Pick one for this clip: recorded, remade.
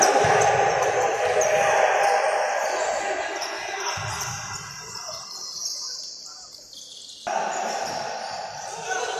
recorded